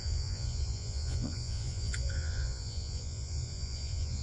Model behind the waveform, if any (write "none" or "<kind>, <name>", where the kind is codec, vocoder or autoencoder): vocoder, Vocos